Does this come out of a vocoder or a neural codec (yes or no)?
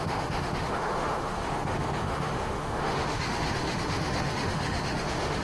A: yes